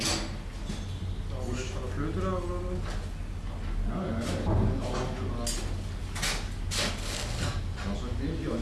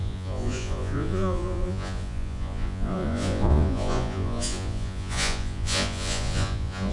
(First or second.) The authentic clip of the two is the first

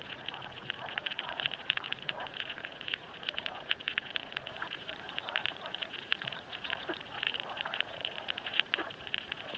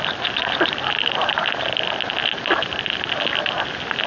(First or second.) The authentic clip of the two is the second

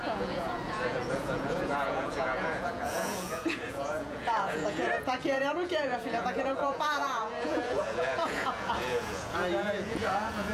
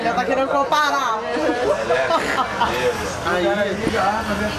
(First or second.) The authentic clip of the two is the second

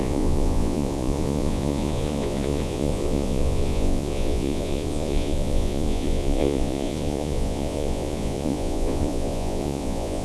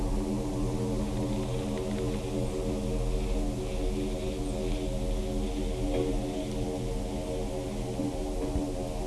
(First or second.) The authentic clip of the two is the second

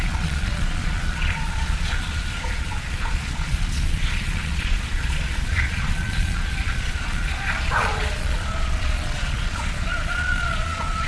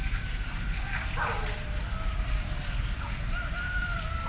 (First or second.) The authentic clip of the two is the second